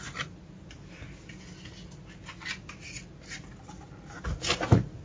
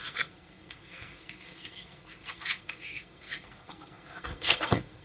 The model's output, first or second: second